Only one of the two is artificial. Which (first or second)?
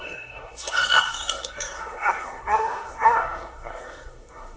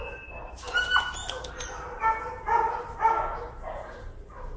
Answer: first